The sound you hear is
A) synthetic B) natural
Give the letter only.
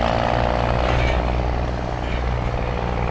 B